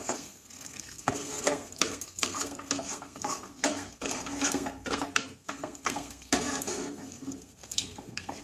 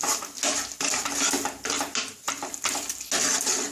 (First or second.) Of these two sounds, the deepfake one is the first